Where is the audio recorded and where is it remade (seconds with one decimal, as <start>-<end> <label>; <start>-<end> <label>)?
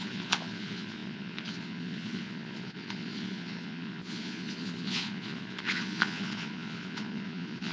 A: 0.0-7.7 remade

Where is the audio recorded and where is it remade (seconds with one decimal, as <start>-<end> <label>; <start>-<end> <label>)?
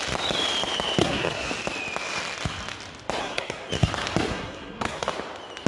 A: 0.0-1.0 recorded; 1.0-1.5 remade; 1.5-3.2 recorded; 3.2-3.7 remade; 3.7-4.3 recorded; 4.3-5.1 remade; 5.1-5.7 recorded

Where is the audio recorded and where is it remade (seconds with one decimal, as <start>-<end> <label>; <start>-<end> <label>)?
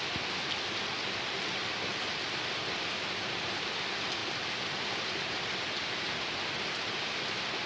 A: 0.0-7.7 recorded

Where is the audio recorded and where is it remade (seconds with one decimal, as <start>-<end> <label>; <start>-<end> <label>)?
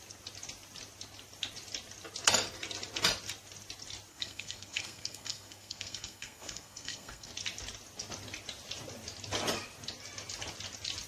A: 0.0-4.1 recorded; 4.1-7.3 remade; 7.3-11.1 recorded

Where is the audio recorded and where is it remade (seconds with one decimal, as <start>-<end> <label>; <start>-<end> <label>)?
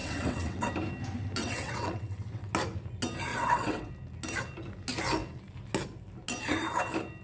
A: 0.0-0.7 remade; 0.7-1.4 recorded; 1.4-2.5 remade; 2.5-3.3 recorded; 3.3-3.9 remade; 3.9-7.2 recorded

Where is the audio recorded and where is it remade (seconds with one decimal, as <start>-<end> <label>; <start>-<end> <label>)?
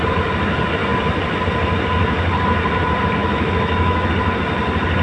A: 0.0-3.2 recorded; 3.2-4.1 remade; 4.1-5.0 recorded